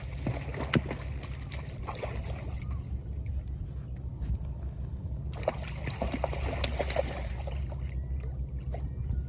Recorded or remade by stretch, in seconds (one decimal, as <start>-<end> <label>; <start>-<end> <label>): 0.0-9.3 recorded